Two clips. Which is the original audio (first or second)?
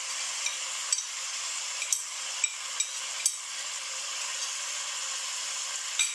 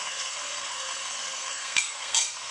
first